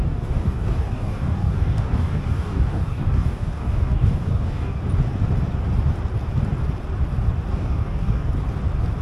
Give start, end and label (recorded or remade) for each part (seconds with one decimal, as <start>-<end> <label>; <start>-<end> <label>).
0.0-4.8 remade; 4.8-7.5 recorded; 7.5-8.3 remade; 8.3-9.0 recorded